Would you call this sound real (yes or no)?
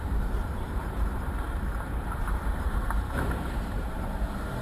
no